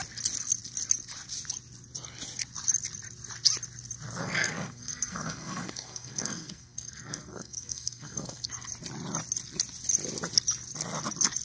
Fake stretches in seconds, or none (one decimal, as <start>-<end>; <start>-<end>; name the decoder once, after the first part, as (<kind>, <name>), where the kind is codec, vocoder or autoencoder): 4.2-8.5 (codec, SNAC)